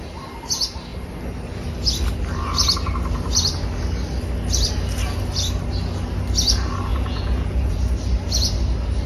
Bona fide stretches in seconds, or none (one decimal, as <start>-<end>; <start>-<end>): 0.0-6.9; 7.7-9.1